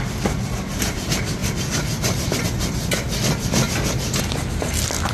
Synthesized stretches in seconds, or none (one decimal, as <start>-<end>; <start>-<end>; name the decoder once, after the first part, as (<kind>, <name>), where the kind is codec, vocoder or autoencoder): none

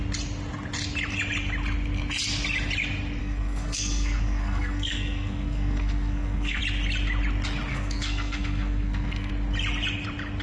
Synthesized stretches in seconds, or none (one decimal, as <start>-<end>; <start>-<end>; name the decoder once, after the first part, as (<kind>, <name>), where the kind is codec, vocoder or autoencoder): 3.2-6.6 (codec, SNAC); 7.7-9.3

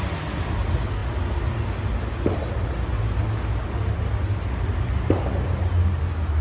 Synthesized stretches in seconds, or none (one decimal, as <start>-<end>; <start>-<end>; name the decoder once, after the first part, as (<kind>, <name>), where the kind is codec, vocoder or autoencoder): none

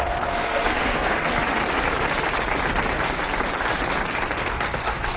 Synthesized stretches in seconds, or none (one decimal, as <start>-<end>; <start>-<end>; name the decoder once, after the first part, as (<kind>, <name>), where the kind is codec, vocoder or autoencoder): 0.0-1.3 (codec, SNAC); 4.4-5.2

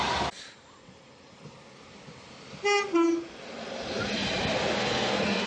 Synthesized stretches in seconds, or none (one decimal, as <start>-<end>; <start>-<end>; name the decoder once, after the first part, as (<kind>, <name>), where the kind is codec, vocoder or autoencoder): 4.8-5.5 (codec, SNAC)

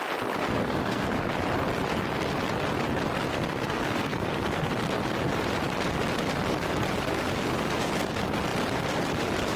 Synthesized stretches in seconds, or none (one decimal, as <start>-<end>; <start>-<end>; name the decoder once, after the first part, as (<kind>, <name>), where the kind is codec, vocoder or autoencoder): 0.6-1.3 (codec, SNAC); 3.3-4.7

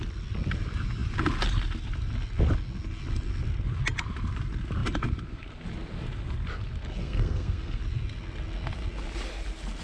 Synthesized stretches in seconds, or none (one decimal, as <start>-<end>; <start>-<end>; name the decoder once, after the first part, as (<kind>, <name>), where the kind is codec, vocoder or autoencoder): 7.0-7.8 (codec, SNAC)